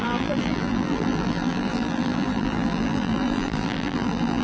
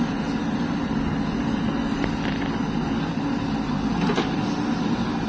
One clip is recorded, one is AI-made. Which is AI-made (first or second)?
first